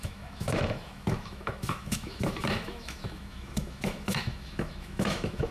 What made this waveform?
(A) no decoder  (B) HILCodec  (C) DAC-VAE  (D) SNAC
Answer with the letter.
C